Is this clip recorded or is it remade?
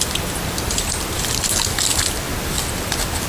recorded